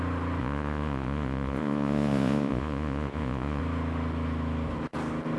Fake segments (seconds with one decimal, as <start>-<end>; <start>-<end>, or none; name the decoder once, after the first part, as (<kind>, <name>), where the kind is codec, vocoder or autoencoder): 0.4-3.6 (vocoder, Vocos)